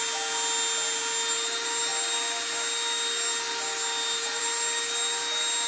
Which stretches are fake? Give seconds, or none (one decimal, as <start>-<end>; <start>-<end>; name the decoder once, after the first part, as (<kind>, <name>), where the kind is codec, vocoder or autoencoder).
none